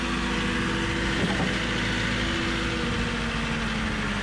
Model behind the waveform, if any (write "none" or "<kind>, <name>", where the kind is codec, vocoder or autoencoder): none